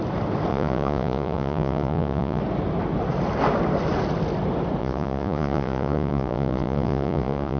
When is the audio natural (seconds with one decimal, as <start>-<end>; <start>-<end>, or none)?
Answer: 0.0-0.5; 2.4-4.8